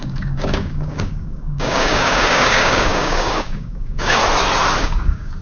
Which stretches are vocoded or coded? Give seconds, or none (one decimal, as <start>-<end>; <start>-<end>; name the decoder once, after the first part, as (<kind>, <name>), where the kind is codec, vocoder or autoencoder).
0.0-4.2 (codec, DAC); 4.8-5.4